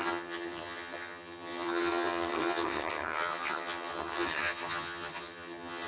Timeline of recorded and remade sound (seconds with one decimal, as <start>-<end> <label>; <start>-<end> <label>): 0.0-5.9 remade